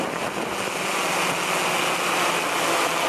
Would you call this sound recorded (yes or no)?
yes